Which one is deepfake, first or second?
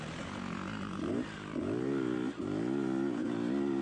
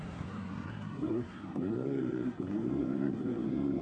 second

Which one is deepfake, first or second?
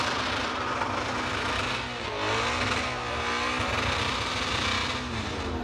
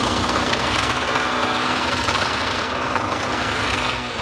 second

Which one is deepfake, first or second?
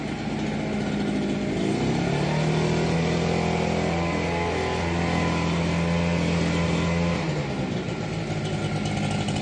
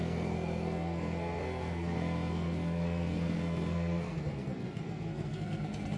second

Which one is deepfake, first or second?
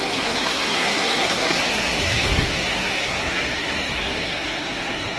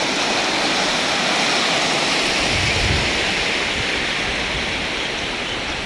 first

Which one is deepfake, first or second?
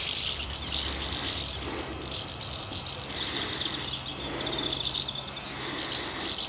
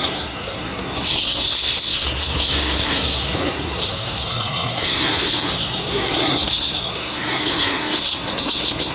second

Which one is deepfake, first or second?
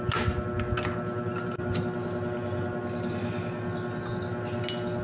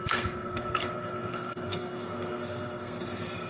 second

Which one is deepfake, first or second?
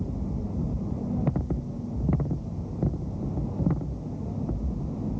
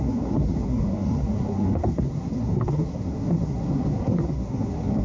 second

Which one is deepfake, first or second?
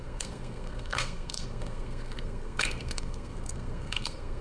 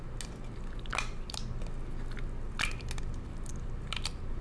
first